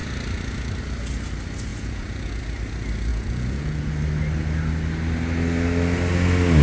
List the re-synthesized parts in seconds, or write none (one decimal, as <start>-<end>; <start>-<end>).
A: 1.7-2.4; 3.1-3.9